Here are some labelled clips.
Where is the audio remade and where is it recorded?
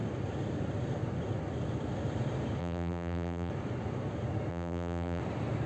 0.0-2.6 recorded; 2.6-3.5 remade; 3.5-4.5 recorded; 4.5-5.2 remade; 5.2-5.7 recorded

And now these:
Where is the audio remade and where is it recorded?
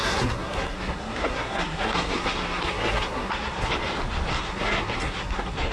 0.0-3.7 remade; 3.7-4.3 recorded; 4.3-5.7 remade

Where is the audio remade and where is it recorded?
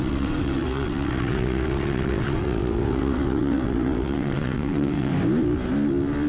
0.0-5.1 remade; 5.1-6.3 recorded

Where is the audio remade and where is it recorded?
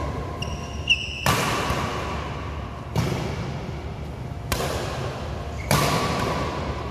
0.0-6.9 recorded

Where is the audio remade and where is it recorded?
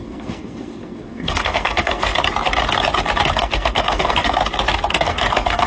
0.0-2.1 remade; 2.1-3.3 recorded; 3.3-4.4 remade; 4.4-4.9 recorded; 4.9-5.7 remade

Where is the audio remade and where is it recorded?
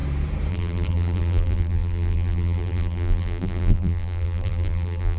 0.0-0.5 recorded; 0.5-5.2 remade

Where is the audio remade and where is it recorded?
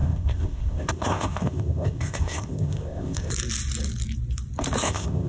0.0-3.3 remade; 3.3-4.8 recorded; 4.8-5.3 remade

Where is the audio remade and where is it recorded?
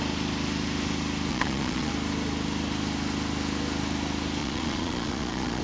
0.0-1.3 recorded; 1.3-1.9 remade; 1.9-4.4 recorded; 4.4-5.6 remade